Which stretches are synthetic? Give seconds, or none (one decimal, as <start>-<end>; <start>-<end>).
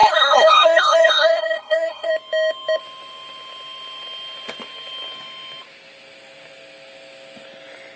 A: 0.0-2.1